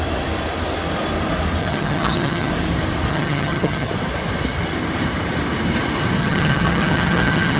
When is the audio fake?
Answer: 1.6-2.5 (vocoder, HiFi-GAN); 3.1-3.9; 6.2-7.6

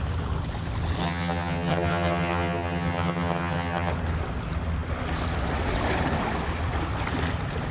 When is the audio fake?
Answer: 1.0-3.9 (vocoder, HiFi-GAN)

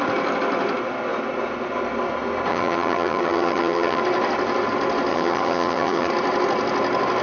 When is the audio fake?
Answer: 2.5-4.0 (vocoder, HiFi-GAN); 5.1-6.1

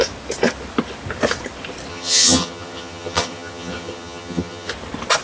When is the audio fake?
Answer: 1.9-4.7 (vocoder, HiFi-GAN)

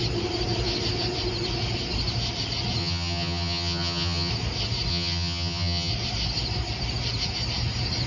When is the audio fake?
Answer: 2.8-4.3 (vocoder, HiFi-GAN); 4.9-5.9

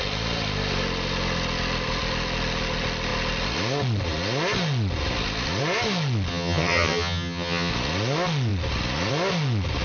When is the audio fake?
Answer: 6.3-7.7 (vocoder, HiFi-GAN)